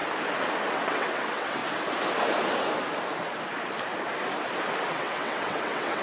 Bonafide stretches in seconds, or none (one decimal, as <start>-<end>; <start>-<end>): 0.0-0.7; 1.6-4.9

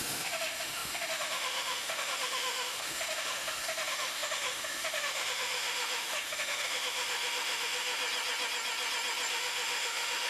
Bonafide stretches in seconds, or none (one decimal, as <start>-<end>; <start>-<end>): 8.0-9.3

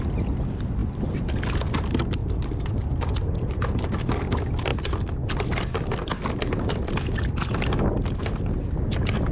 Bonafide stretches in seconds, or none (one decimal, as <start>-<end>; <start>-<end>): 0.0-9.3

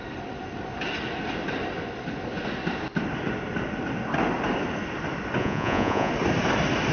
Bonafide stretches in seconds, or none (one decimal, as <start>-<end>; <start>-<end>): 0.0-5.4; 6.1-6.9

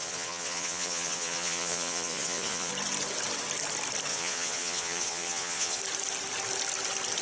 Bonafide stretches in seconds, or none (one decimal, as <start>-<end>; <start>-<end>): 2.7-4.1; 5.8-7.2

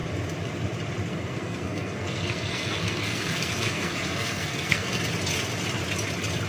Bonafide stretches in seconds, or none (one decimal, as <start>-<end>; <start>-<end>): 0.0-1.1; 5.0-6.5

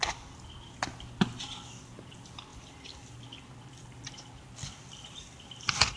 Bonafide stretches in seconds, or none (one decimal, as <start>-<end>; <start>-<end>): 0.0-6.0

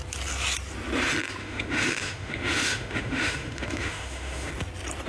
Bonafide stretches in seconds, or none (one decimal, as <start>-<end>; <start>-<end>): 0.0-1.4; 4.5-5.1